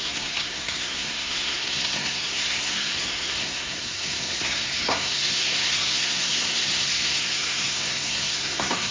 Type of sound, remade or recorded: remade